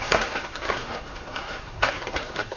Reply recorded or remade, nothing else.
remade